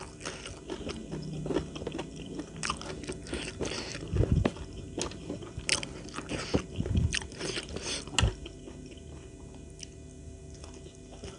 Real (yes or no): yes